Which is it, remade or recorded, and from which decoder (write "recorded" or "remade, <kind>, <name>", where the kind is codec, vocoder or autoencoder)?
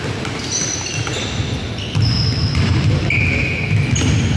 recorded